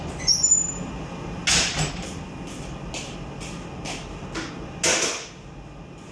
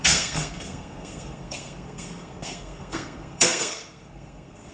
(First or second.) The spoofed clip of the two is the second